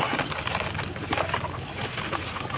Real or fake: real